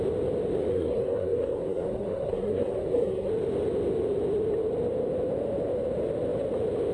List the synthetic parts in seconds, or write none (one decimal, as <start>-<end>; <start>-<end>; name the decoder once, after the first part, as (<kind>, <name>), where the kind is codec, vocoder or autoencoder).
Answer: 0.7-3.3 (codec, SNAC)

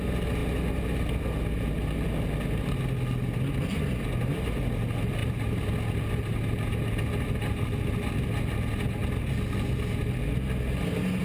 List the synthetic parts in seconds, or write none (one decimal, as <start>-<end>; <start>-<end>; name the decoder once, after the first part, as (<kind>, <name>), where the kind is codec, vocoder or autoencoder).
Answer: none

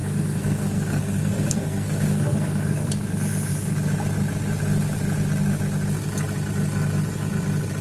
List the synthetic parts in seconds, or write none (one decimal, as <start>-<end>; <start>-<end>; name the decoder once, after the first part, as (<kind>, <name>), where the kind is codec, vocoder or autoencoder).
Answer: 0.0-2.9 (codec, SNAC)

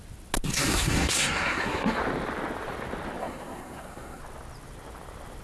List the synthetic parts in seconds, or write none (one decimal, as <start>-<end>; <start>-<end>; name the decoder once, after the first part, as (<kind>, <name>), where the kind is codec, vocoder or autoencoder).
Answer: 0.5-2.0 (codec, SNAC); 3.2-4.2

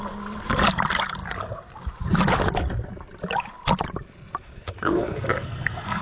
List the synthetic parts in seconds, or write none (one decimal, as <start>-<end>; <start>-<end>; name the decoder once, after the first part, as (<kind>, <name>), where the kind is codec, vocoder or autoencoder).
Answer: 4.4-6.0 (codec, SNAC)

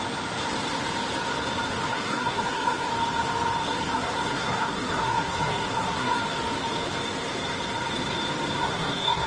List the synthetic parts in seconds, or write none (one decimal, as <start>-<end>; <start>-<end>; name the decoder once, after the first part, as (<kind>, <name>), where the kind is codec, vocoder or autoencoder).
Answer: 1.9-2.9 (codec, SNAC); 3.6-6.2; 8.6-9.3